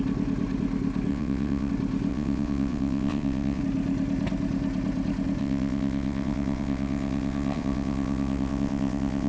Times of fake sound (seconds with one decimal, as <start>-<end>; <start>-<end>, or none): 1.1-1.7; 2.1-3.6; 5.4-9.3

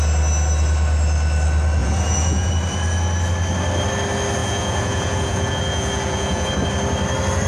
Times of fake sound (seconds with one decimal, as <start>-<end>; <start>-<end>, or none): 1.8-2.5; 4.4-6.5

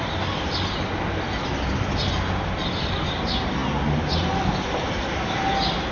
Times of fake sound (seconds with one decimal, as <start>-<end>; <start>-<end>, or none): none

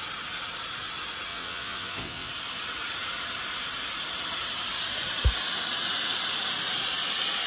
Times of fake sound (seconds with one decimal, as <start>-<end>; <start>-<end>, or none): 1.3-2.3

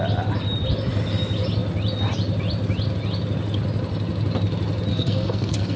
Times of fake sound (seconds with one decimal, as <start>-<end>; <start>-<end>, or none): 4.9-5.8

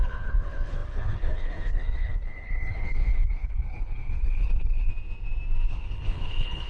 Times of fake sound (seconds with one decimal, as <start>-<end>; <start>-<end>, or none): 0.0-4.9; 5.7-6.7

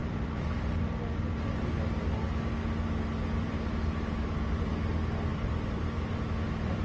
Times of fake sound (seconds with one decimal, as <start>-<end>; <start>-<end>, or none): 0.0-0.8; 5.3-6.0